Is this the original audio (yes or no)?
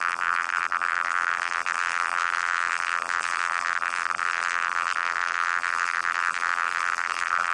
no